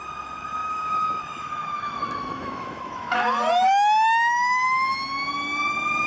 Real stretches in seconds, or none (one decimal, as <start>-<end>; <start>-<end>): 0.0-0.6; 3.5-6.1